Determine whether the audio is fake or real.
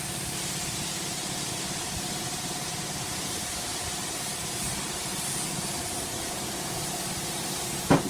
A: real